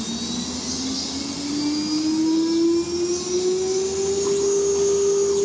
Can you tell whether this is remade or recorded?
recorded